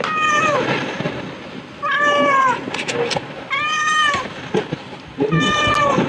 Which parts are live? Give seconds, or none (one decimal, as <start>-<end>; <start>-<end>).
0.0-6.1